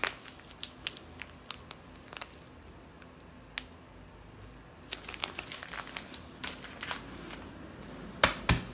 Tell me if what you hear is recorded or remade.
recorded